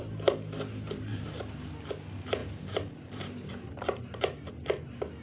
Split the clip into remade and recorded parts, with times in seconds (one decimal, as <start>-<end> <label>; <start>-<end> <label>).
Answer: 0.0-1.1 recorded; 1.1-1.7 remade; 1.7-2.4 recorded; 2.4-4.5 remade; 4.5-5.2 recorded